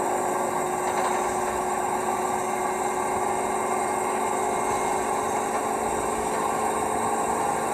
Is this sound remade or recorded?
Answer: recorded